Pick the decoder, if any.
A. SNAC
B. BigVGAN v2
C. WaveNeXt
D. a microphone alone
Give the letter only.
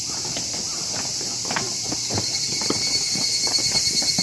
D